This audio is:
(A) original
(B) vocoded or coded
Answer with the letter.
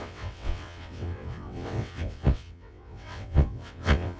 B